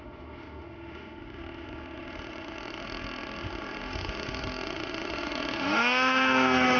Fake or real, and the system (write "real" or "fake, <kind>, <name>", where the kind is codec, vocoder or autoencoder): fake, autoencoder, DAC-VAE